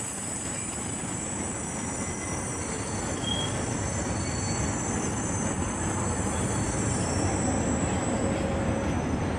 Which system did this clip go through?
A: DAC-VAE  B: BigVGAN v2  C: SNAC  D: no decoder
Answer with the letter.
D